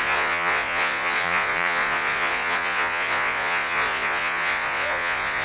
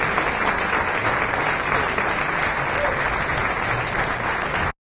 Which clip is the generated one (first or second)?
first